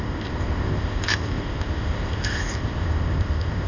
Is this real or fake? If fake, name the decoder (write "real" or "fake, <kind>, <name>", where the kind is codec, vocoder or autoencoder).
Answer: fake, codec, ZipCodec